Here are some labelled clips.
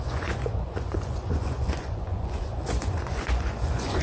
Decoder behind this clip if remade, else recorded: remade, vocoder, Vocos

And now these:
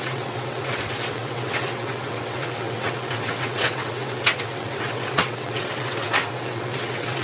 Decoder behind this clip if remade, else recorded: remade, vocoder, WaveNeXt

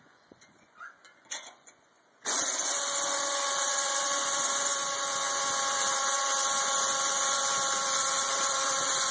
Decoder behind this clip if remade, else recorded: remade, vocoder, Vocos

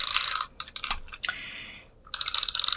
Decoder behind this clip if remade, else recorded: recorded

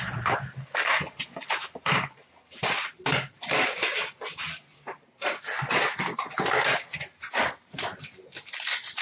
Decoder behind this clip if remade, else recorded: recorded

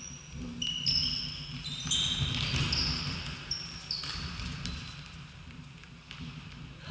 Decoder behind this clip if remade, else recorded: recorded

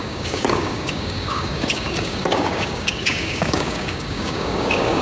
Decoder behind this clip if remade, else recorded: remade, codec, DAC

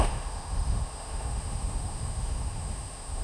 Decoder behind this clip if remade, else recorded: remade, autoencoder, DAC-VAE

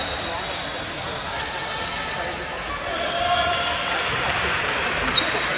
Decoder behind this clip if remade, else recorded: recorded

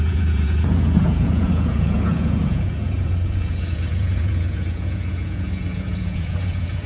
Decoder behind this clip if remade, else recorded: remade, vocoder, Vocos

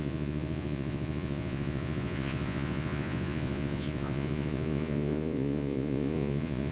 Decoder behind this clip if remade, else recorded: remade, vocoder, Vocos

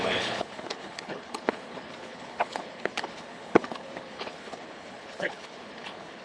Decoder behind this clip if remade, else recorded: remade, codec, HILCodec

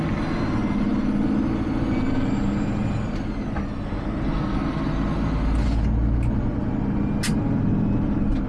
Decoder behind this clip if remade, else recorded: recorded